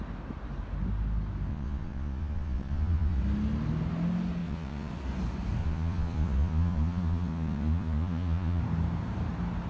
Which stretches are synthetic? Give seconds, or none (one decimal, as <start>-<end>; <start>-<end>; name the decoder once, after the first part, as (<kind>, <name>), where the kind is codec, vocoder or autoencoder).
1.5-3.2 (vocoder, Vocos); 4.4-4.9; 5.6-8.6